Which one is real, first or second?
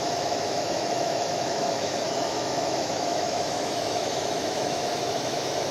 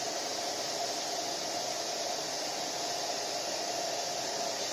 second